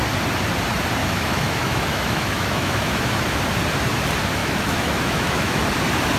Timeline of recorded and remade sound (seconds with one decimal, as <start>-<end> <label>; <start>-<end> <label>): 0.0-1.0 recorded; 1.0-3.4 remade; 3.4-4.4 recorded; 4.4-5.6 remade; 5.6-6.2 recorded